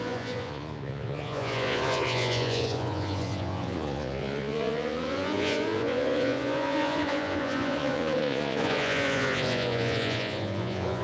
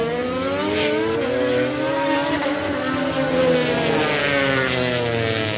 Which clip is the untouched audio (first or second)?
second